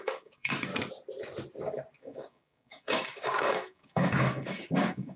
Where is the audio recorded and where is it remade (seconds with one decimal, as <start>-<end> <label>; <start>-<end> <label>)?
0.0-0.7 remade; 0.7-2.0 recorded; 2.0-5.2 remade